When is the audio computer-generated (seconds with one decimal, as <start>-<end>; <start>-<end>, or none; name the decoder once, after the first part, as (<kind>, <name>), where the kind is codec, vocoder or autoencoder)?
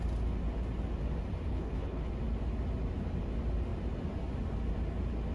1.5-2.1 (codec, HILCodec)